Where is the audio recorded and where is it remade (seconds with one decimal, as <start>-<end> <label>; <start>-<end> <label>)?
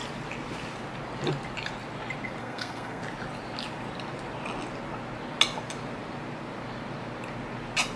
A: 0.0-2.4 recorded; 2.4-3.0 remade; 3.0-8.0 recorded